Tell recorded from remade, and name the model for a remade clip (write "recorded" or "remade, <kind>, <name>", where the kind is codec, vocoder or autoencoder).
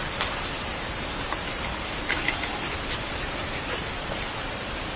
recorded